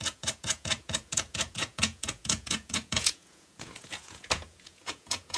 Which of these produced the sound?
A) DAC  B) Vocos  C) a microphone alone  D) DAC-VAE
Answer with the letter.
B